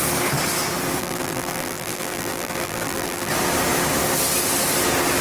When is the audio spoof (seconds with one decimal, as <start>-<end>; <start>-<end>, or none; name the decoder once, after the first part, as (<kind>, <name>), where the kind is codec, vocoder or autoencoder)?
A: 1.0-3.3 (vocoder, BigVGAN v2)

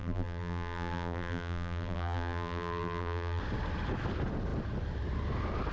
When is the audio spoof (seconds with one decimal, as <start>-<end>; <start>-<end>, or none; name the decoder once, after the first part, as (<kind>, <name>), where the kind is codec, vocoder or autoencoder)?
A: 0.0-3.4 (vocoder, BigVGAN v2)

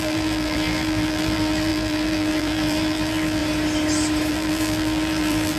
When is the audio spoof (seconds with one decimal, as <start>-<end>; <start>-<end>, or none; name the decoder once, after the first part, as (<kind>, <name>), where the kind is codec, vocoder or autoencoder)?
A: 0.0-3.4 (vocoder, BigVGAN v2); 4.3-5.6

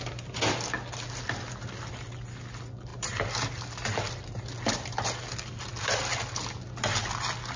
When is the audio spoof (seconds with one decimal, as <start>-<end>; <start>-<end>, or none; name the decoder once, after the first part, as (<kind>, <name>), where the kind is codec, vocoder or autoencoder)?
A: none